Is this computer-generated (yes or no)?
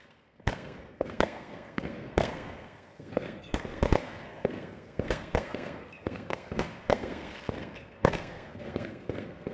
yes